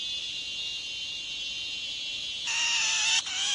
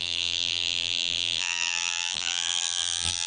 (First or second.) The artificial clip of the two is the second